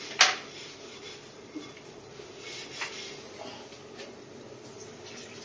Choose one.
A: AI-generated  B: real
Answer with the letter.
B